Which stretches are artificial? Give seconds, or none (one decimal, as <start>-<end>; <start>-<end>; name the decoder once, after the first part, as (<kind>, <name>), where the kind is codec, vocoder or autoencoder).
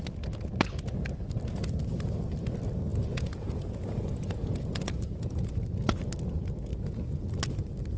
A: 2.9-5.6 (vocoder, Vocos); 6.7-7.2